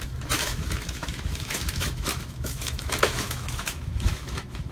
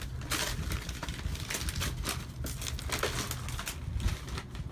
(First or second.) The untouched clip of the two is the second